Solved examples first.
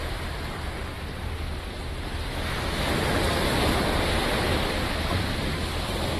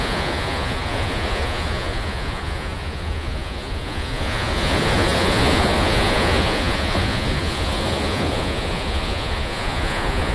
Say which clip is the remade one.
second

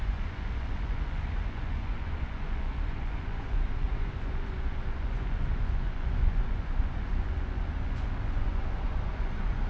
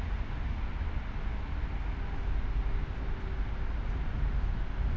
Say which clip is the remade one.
first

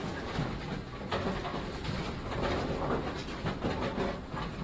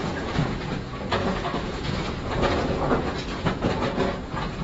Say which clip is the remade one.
second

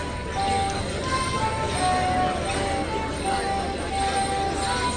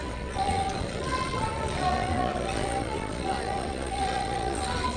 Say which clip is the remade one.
second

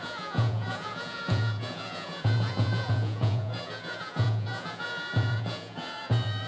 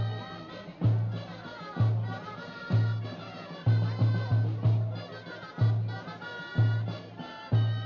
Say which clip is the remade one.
first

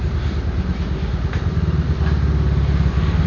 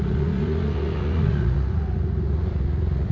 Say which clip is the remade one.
second